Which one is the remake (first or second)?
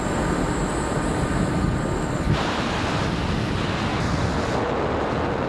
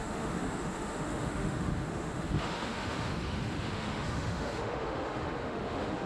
second